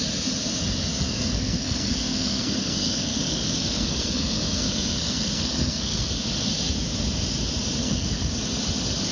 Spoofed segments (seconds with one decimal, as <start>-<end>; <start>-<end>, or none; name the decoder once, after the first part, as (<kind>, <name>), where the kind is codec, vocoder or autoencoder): 0.9-6.1 (codec, SNAC); 7.8-8.3